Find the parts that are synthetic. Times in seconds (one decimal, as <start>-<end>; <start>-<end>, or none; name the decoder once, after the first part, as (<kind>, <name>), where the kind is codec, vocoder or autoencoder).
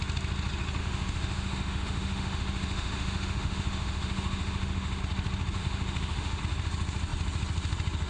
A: 0.8-5.0 (autoencoder, DAC-VAE); 5.6-6.4